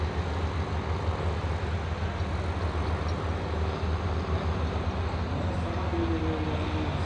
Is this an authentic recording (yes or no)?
yes